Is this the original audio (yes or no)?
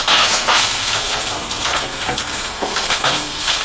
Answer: no